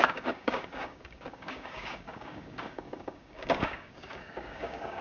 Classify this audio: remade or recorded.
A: remade